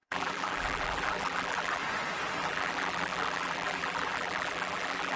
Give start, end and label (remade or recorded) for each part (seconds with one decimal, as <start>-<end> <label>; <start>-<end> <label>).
0.0-1.8 remade; 1.8-2.4 recorded; 2.4-5.2 remade